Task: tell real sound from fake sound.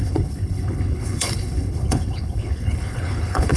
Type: fake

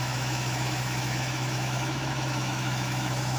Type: fake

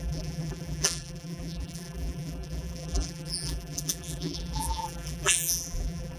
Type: fake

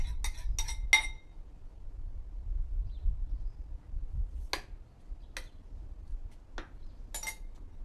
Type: real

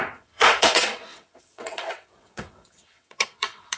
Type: fake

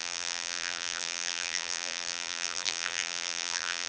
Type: fake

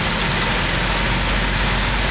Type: real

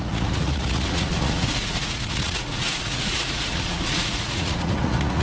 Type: fake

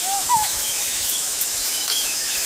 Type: fake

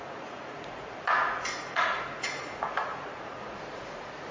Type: fake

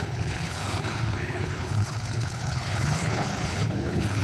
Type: fake